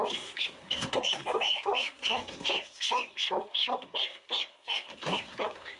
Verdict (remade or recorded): remade